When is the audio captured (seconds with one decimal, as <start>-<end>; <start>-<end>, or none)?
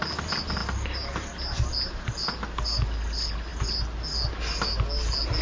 0.0-5.4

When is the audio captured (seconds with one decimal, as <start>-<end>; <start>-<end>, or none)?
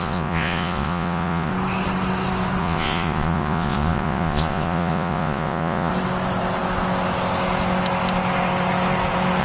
1.5-2.6; 5.9-9.4